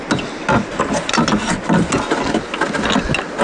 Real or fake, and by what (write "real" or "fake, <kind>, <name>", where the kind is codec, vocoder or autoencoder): real